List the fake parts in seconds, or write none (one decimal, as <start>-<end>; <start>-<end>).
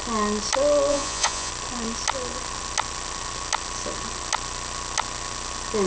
0.9-1.5